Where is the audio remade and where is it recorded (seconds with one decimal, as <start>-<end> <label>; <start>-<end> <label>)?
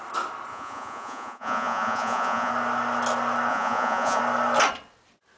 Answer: 0.0-0.5 recorded; 0.5-2.5 remade; 2.5-3.5 recorded; 3.5-4.2 remade; 4.2-5.4 recorded